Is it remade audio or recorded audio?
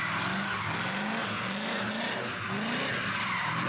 recorded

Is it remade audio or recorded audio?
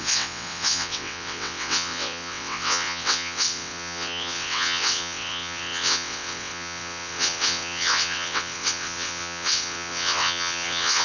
remade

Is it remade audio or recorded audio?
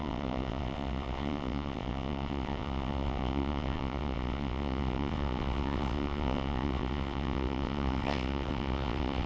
remade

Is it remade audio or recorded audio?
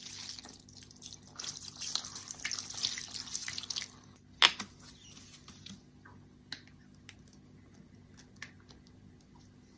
recorded